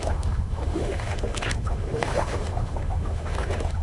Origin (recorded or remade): remade